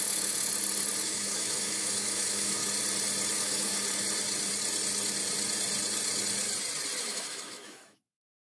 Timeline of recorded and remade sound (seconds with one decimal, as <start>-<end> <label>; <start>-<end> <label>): 0.0-0.5 remade; 0.5-1.0 recorded; 1.0-2.6 remade; 2.6-3.3 recorded; 3.3-3.7 remade; 3.7-7.0 recorded; 7.0-8.4 remade